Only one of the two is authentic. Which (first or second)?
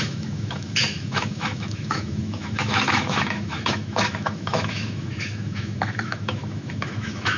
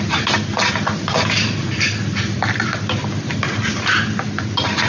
second